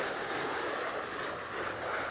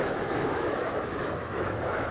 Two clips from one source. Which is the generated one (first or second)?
second